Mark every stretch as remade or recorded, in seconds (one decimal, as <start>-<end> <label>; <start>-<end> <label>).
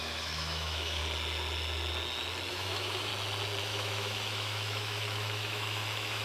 0.0-1.0 remade; 1.0-2.5 recorded; 2.5-3.1 remade; 3.1-3.6 recorded; 3.6-6.2 remade